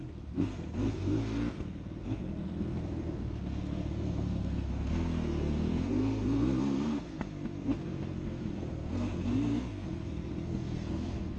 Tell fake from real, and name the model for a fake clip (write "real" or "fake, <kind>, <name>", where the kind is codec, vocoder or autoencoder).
fake, codec, SNAC